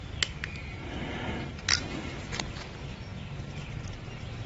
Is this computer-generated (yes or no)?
no